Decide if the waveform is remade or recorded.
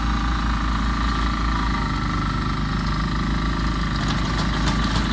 recorded